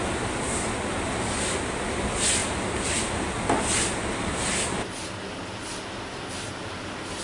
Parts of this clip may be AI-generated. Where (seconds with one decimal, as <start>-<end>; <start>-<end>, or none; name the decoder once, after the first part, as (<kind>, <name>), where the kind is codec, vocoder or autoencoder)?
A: none